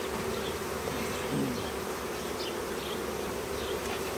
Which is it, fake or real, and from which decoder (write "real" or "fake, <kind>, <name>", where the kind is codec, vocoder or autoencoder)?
real